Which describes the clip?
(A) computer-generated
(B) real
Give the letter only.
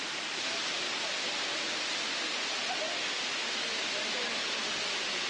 B